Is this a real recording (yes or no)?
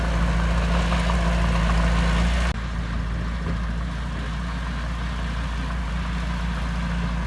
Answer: yes